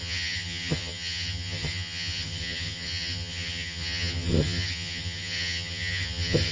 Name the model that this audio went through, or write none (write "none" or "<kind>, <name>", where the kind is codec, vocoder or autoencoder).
vocoder, HiFi-GAN